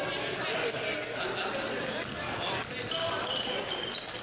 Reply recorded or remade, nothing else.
recorded